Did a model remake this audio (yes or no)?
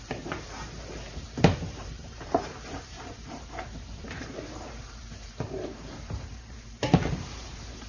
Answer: yes